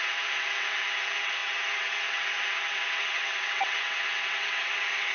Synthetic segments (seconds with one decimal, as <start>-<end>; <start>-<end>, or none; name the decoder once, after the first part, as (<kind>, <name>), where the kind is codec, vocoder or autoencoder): 0.0-5.1 (vocoder, WaveNeXt)